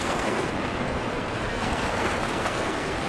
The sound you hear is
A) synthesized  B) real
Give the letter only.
A